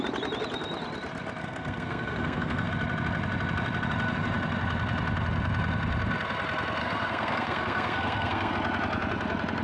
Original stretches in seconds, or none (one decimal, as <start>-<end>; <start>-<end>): 0.0-1.4; 2.7-6.8; 8.5-9.6